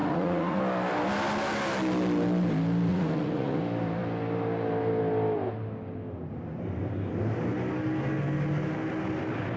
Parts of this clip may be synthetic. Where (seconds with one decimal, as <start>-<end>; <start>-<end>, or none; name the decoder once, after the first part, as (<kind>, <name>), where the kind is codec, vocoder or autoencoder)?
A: 0.0-0.6 (vocoder, Vocos); 2.9-3.6